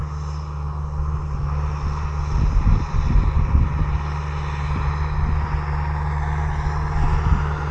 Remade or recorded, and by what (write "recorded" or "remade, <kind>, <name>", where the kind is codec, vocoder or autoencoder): recorded